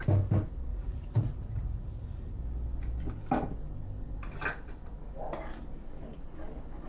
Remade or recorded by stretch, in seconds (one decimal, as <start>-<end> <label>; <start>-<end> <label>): 0.0-0.7 recorded; 0.7-2.4 remade; 2.4-6.9 recorded